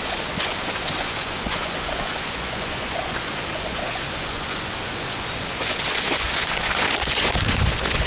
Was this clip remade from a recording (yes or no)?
yes